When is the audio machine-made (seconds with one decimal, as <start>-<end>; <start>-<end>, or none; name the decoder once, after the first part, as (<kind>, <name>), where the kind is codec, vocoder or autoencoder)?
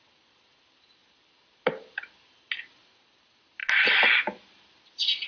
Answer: none